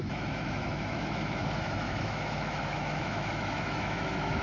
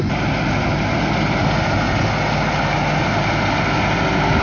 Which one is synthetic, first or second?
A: first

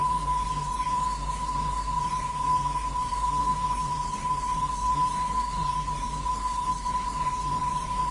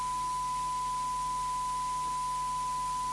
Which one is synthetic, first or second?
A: first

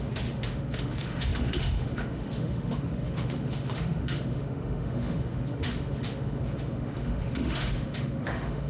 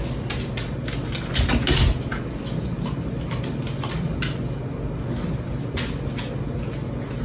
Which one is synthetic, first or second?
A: first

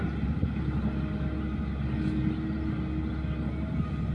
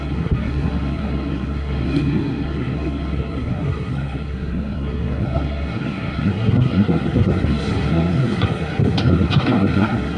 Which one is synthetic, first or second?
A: second